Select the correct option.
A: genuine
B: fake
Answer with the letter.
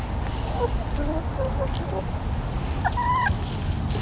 A